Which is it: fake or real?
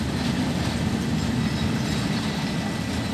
real